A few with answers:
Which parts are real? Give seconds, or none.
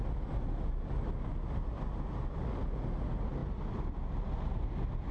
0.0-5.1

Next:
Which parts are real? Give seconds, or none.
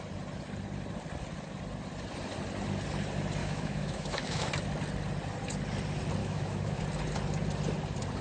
0.0-3.4; 4.5-6.2; 6.8-8.2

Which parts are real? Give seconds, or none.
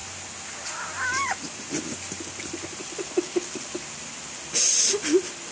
0.0-5.5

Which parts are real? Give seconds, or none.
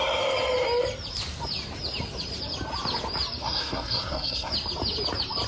0.0-3.4; 4.5-5.5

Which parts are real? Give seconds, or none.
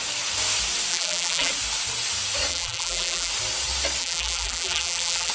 0.0-0.9; 1.5-2.5; 3.3-4.0